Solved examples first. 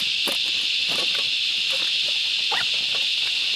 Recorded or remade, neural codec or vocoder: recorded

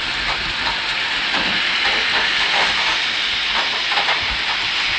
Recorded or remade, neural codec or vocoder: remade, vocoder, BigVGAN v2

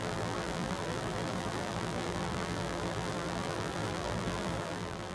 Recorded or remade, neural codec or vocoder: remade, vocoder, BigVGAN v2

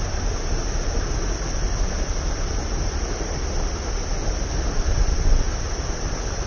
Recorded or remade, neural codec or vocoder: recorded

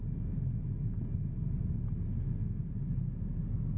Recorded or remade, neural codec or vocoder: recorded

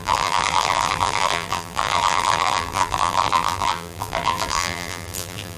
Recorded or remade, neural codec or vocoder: remade, vocoder, BigVGAN v2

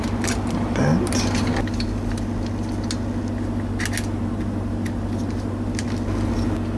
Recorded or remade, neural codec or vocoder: recorded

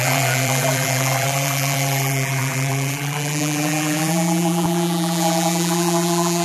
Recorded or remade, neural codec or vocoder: remade, vocoder, BigVGAN v2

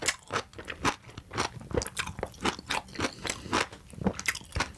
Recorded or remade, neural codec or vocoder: recorded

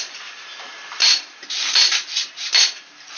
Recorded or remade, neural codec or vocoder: remade, vocoder, BigVGAN v2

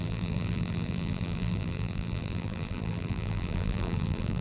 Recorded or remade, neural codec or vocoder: remade, vocoder, BigVGAN v2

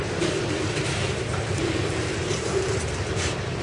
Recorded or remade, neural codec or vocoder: remade, vocoder, BigVGAN v2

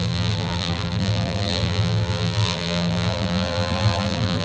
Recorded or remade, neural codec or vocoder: remade, vocoder, BigVGAN v2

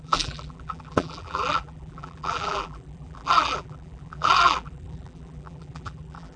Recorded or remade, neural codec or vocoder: remade, vocoder, BigVGAN v2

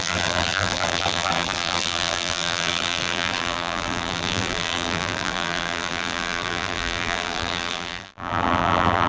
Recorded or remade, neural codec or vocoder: remade, vocoder, BigVGAN v2